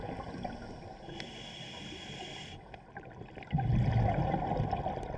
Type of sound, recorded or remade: recorded